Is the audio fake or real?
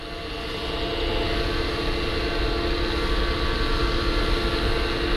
real